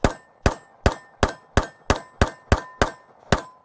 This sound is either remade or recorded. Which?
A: recorded